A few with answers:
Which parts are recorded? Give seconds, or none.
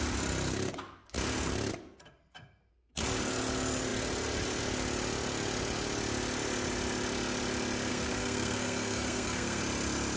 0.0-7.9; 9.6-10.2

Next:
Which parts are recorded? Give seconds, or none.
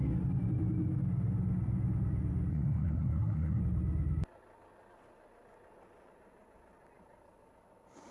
0.0-2.5; 3.6-8.1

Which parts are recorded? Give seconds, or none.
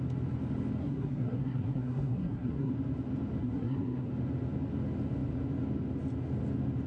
0.0-0.8; 2.7-3.4; 4.1-6.9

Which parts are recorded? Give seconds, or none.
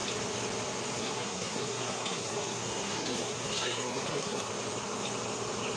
0.0-1.0; 4.5-5.8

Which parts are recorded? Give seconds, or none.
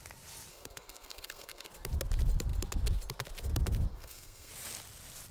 0.0-0.5; 1.7-3.9; 4.5-5.3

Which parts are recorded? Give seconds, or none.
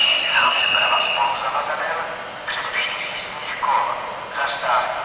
0.6-5.0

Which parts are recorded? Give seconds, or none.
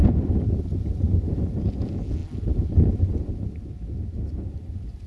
0.0-5.1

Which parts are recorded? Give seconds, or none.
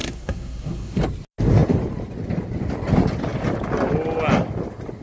1.0-5.0